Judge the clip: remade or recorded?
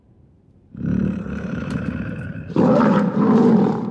remade